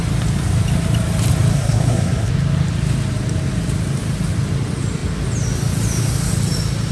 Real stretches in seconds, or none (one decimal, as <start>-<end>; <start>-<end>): 0.0-1.5; 2.3-6.9